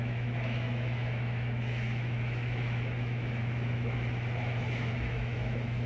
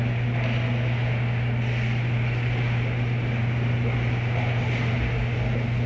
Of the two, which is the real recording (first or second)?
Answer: second